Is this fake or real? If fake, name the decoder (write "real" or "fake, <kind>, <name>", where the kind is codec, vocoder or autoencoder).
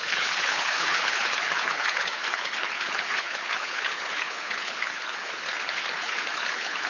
fake, codec, HILCodec